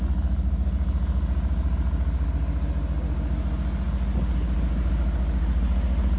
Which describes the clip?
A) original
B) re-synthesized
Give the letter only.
A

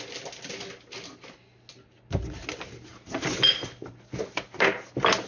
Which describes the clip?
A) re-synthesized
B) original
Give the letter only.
B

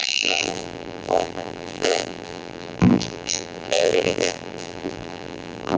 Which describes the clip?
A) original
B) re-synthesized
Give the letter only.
B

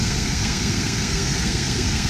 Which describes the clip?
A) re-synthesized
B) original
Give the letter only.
A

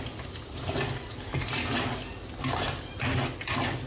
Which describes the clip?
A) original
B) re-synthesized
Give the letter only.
A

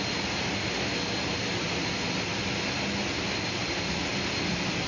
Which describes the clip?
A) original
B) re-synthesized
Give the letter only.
A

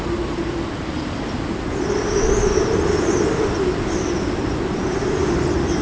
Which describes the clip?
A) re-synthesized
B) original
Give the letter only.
B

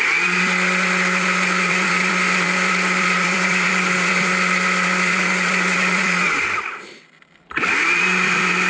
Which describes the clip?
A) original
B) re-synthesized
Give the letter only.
B